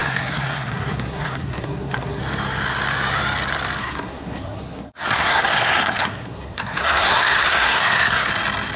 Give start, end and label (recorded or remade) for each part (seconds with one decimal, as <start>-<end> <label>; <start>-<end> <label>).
0.0-2.2 remade; 2.2-3.8 recorded; 3.8-8.3 remade; 8.3-8.8 recorded